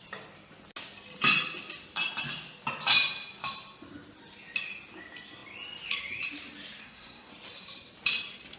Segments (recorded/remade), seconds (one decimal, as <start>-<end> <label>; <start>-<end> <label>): 0.0-6.8 recorded; 6.8-7.3 remade; 7.3-8.6 recorded